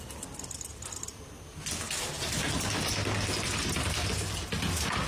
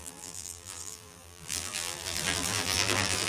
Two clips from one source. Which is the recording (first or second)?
first